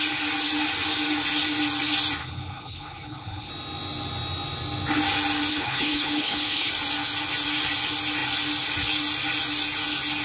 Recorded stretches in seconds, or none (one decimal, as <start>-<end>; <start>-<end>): 0.0-2.2; 3.5-5.5; 6.7-10.2